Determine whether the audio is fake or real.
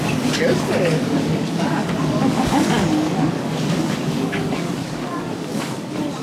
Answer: fake